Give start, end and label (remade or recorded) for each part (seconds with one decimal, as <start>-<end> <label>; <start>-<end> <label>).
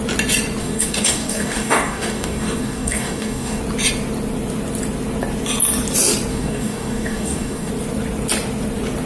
0.0-0.6 recorded; 0.6-3.6 remade; 3.6-6.3 recorded; 6.3-7.7 remade; 7.7-9.1 recorded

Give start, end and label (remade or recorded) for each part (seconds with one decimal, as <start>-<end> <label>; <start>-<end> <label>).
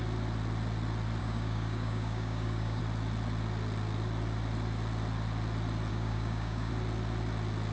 0.0-1.2 recorded; 1.2-2.8 remade; 2.8-5.9 recorded; 5.9-6.7 remade; 6.7-7.7 recorded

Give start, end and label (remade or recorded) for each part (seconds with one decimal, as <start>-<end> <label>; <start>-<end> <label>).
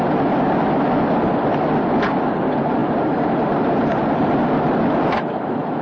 0.0-5.8 recorded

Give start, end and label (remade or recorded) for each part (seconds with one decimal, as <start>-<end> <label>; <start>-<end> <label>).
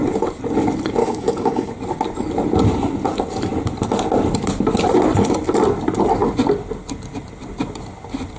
0.0-1.0 recorded; 1.0-1.7 remade; 1.7-8.4 recorded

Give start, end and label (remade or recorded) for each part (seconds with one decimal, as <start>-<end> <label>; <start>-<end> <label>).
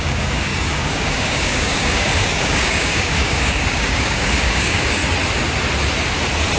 0.0-5.0 remade; 5.0-6.6 recorded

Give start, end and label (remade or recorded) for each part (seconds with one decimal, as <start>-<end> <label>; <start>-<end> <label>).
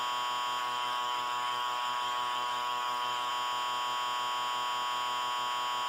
0.0-0.6 recorded; 0.6-3.3 remade; 3.3-5.9 recorded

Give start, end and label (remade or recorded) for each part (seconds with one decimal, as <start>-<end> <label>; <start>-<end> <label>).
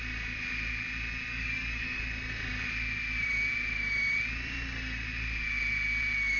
0.0-1.3 recorded; 1.3-2.0 remade; 2.0-6.4 recorded